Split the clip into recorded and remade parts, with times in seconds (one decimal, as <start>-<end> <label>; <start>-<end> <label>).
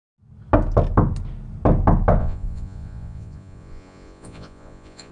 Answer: 0.0-2.2 recorded; 2.2-5.1 remade